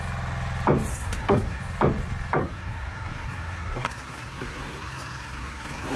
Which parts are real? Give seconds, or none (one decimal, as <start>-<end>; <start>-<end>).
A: 0.0-0.9; 1.6-2.4